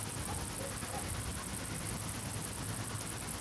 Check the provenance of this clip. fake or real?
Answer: real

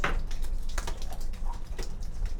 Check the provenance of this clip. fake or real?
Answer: fake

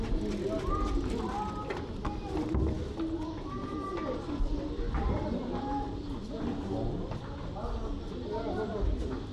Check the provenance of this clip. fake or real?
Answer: real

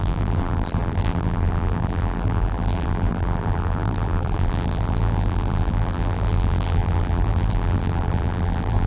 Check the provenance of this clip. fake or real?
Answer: fake